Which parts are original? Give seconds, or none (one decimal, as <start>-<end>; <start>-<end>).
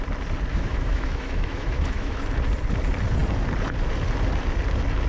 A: 0.0-0.5; 2.2-5.1